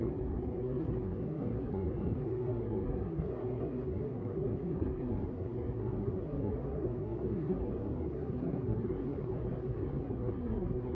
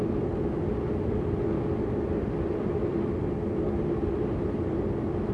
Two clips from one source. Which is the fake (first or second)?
first